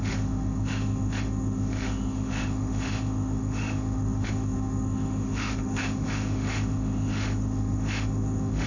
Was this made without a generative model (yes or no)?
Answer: no